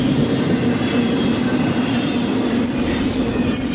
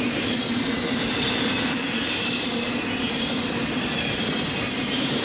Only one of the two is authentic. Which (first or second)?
first